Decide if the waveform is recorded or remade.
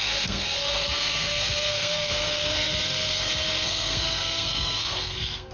remade